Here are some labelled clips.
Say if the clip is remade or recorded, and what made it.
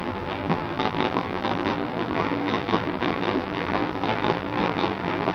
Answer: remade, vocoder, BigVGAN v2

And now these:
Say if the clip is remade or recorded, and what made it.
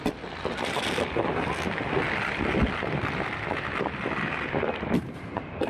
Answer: remade, vocoder, BigVGAN v2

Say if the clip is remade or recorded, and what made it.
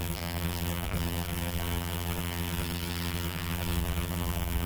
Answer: remade, vocoder, BigVGAN v2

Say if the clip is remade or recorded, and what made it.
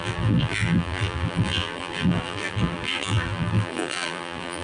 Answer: remade, vocoder, BigVGAN v2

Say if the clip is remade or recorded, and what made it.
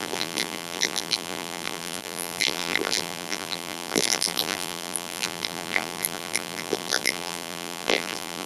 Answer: remade, vocoder, BigVGAN v2